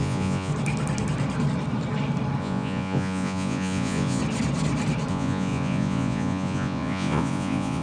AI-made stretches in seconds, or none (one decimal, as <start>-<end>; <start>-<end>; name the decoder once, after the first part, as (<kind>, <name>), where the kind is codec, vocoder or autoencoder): 0.0-0.5 (vocoder, Vocos); 2.4-4.2; 5.1-7.8